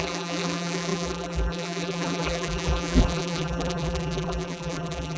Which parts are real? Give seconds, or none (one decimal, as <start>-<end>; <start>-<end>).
none